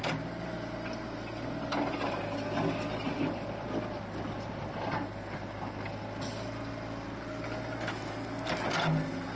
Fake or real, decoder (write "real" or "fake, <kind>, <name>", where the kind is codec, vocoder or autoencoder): real